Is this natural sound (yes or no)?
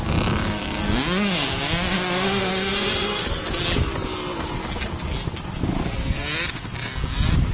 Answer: yes